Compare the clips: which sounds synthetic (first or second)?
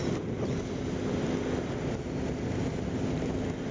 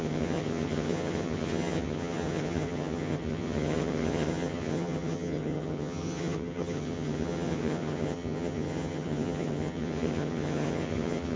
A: second